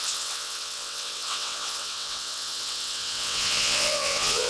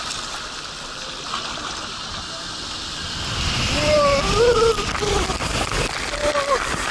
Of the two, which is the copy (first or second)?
first